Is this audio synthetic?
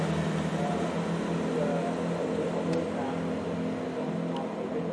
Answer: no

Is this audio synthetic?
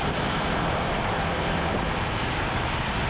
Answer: no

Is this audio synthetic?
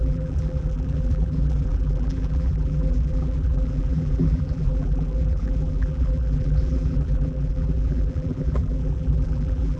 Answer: yes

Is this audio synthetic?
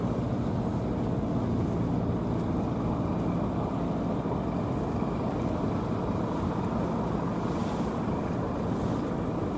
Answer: no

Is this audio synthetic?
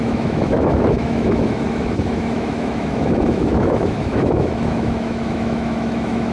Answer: yes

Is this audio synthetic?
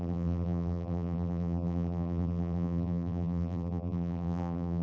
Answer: yes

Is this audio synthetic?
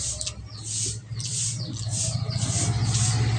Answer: no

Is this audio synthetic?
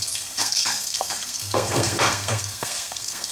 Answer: yes